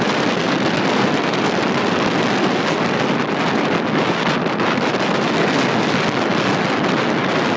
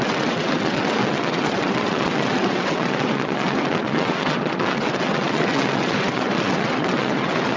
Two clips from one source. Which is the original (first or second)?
first